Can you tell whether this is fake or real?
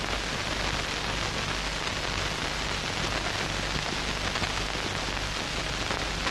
real